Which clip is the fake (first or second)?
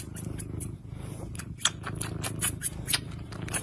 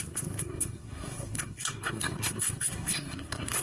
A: second